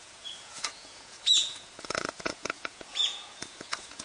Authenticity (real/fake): fake